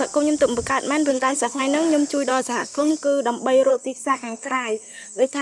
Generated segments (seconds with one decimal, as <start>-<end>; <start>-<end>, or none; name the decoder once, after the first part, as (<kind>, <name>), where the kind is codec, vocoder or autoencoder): 1.1-1.6 (codec, SNAC); 2.3-2.9; 3.7-5.4